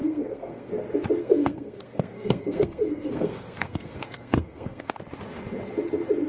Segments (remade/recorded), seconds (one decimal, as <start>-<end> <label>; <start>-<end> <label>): 0.0-0.7 remade; 0.7-1.2 recorded; 1.2-5.0 remade; 5.0-6.3 recorded